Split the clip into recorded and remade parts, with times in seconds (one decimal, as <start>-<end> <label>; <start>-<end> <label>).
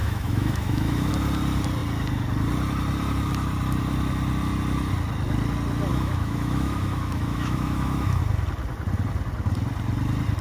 0.0-1.1 remade; 1.1-5.9 recorded; 5.9-8.2 remade; 8.2-10.4 recorded